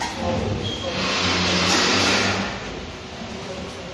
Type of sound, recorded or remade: recorded